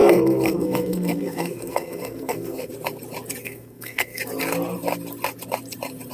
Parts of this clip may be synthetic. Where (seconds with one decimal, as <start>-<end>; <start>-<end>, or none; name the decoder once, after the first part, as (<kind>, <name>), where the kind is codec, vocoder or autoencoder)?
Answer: 0.0-2.7 (codec, SNAC); 3.4-4.2